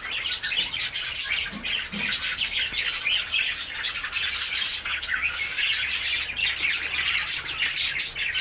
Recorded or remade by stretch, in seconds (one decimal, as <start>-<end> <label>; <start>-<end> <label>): 0.0-4.9 recorded; 4.9-5.6 remade; 5.6-8.4 recorded